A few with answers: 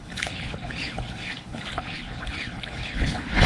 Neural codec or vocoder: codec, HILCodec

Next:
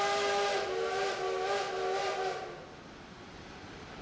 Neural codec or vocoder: none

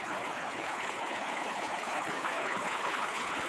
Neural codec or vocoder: codec, HILCodec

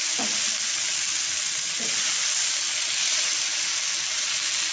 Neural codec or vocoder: none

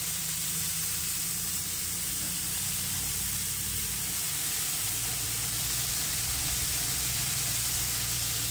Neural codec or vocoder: vocoder, BigVGAN v2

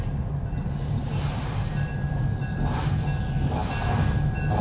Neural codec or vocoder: none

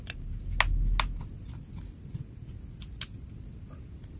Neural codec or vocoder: none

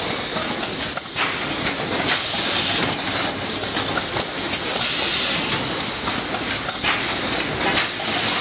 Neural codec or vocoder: none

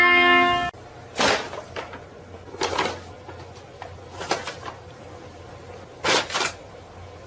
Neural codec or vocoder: none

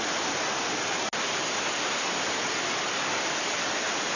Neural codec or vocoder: none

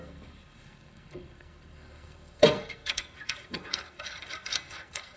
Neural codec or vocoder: codec, SNAC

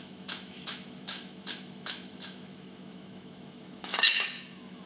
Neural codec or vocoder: autoencoder, DAC-VAE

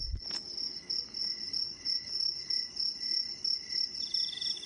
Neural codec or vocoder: none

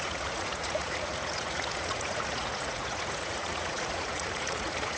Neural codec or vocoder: vocoder, Vocos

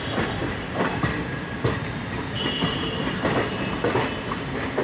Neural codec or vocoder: none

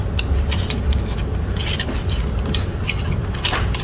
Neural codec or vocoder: none